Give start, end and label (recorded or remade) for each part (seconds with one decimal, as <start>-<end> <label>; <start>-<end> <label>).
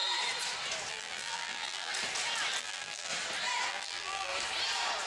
0.0-0.9 recorded; 0.9-1.9 remade; 1.9-2.6 recorded; 2.6-3.1 remade; 3.1-3.7 recorded; 3.7-4.3 remade; 4.3-5.1 recorded